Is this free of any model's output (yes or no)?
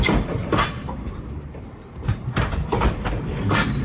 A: no